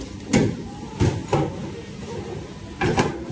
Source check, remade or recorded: recorded